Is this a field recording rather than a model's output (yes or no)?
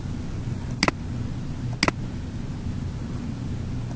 yes